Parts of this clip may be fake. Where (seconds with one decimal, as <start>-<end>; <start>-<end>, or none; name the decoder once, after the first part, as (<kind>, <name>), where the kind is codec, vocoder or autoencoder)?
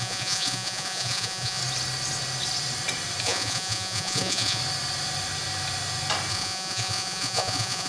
0.0-1.6 (vocoder, Vocos); 3.2-4.6; 6.3-7.9